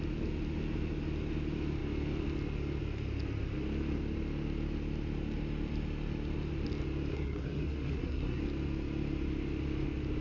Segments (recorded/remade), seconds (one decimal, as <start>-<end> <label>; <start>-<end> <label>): 0.0-7.1 recorded; 7.1-8.4 remade; 8.4-10.2 recorded